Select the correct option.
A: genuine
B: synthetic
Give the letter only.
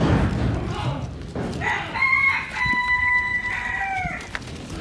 A